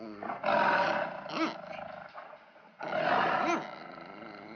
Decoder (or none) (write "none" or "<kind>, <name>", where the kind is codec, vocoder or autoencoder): none